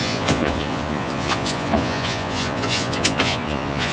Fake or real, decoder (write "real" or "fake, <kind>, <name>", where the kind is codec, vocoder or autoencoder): fake, vocoder, Vocos